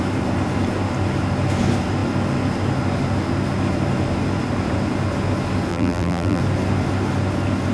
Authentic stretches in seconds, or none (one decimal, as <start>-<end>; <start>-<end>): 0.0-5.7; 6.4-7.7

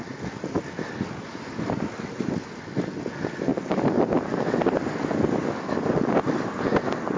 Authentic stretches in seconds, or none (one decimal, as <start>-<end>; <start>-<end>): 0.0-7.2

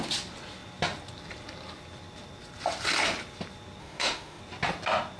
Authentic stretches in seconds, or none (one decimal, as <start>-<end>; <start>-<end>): 0.0-3.8; 4.4-5.2

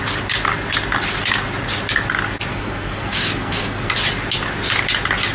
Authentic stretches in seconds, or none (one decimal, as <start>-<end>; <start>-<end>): 0.0-2.5; 3.9-5.3